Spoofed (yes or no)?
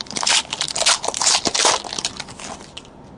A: no